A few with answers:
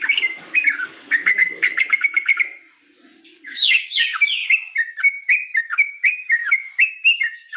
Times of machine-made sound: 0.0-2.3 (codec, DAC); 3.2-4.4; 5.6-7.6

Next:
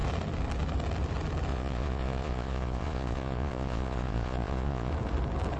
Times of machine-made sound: 1.5-4.9 (vocoder, Vocos)